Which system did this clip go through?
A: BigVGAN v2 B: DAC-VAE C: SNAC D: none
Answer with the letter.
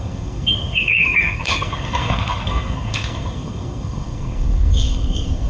C